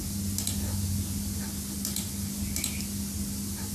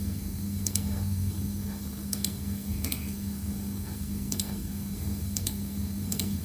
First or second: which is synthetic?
second